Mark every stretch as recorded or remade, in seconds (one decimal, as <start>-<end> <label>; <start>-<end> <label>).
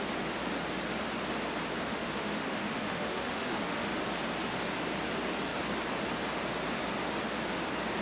0.0-1.9 recorded; 1.9-3.9 remade; 3.9-8.0 recorded